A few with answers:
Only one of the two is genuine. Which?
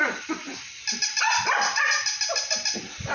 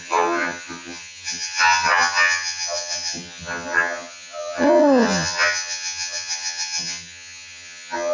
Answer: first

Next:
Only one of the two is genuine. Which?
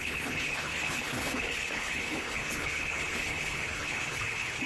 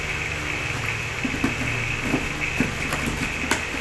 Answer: second